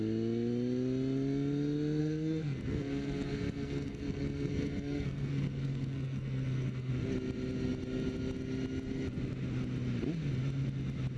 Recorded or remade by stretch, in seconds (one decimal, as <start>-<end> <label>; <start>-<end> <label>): 0.0-2.0 recorded; 2.0-6.9 remade; 6.9-11.2 recorded